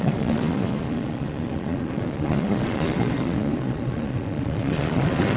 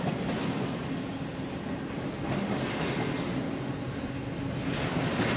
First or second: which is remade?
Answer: first